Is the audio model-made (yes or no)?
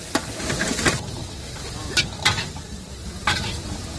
yes